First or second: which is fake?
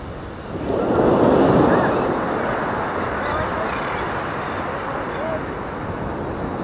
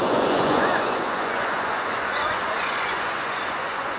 second